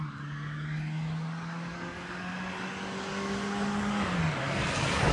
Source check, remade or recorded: remade